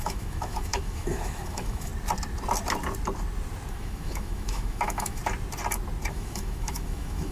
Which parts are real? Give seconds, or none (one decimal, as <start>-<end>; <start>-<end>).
1.9-3.7; 5.2-6.1